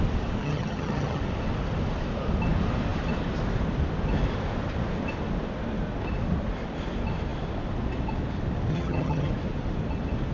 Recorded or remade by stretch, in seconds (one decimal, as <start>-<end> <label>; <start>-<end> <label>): 0.0-0.4 recorded; 0.4-1.2 remade; 1.2-8.7 recorded; 8.7-9.3 remade; 9.3-10.3 recorded